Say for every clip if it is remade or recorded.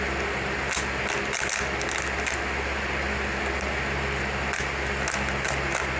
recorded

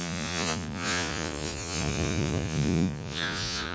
remade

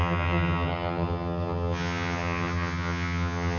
remade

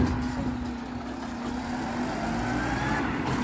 recorded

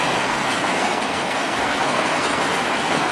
remade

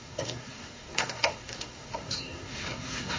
remade